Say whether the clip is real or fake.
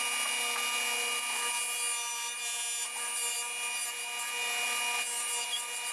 real